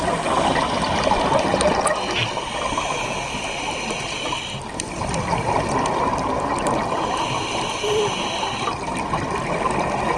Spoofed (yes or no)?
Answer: no